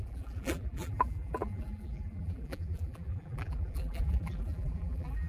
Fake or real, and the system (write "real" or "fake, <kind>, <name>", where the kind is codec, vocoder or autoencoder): fake, vocoder, BigVGAN v2